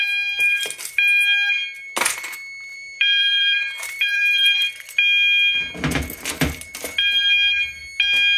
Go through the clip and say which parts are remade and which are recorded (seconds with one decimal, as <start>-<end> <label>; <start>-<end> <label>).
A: 0.0-2.7 recorded; 2.7-4.7 remade; 4.7-8.4 recorded